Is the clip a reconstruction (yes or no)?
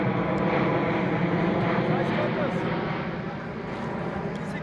no